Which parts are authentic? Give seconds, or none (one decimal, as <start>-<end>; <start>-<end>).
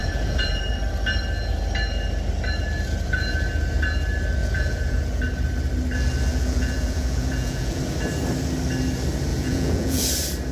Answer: 0.6-4.4; 5.2-6.3; 7.8-9.3; 10.0-10.5